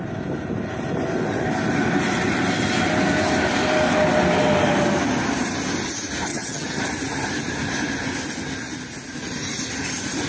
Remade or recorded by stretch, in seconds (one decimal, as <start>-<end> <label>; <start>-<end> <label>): 0.0-6.3 recorded; 6.3-6.8 remade; 6.8-10.3 recorded